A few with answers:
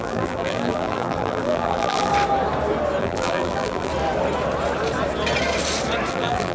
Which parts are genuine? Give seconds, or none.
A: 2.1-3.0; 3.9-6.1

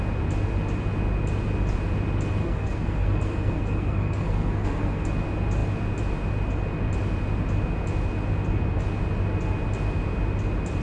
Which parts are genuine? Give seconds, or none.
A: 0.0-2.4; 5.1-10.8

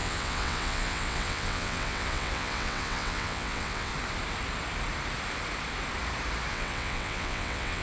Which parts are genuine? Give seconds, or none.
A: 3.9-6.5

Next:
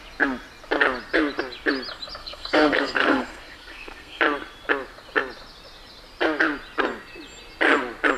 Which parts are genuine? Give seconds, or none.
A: 0.0-2.2; 4.2-8.2